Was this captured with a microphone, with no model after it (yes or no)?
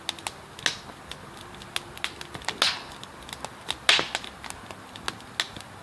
yes